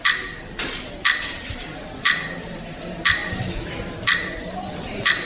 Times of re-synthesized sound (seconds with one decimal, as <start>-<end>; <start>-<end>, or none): none